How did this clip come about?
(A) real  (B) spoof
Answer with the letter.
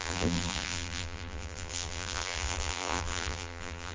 B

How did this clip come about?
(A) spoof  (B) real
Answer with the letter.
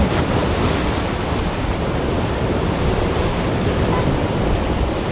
A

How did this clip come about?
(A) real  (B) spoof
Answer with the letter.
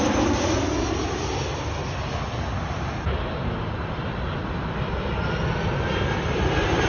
A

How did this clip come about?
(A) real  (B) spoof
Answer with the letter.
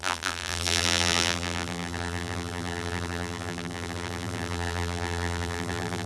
B